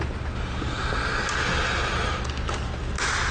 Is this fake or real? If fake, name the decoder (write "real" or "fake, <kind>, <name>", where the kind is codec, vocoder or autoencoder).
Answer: real